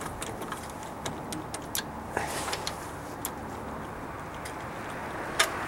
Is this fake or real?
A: real